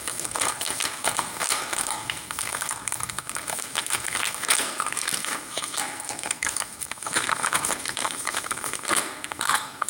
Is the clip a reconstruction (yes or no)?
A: yes